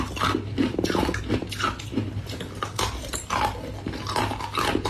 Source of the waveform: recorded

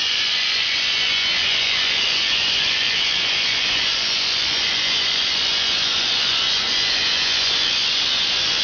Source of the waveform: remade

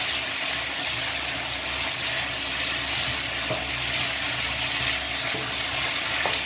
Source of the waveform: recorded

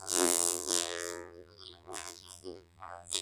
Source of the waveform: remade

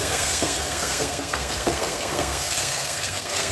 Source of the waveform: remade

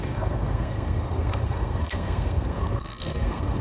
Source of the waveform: remade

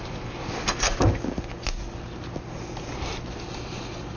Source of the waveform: recorded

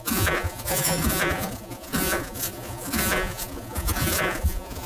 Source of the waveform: remade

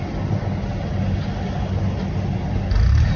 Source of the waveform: recorded